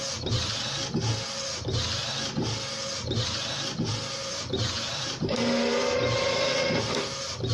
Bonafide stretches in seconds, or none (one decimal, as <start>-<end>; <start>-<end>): 0.0-4.3; 6.5-7.5